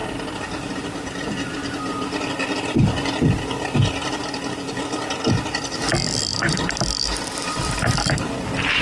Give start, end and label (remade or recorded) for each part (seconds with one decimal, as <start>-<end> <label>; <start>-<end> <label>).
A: 0.0-4.7 remade; 4.7-6.3 recorded; 6.3-8.2 remade; 8.2-8.8 recorded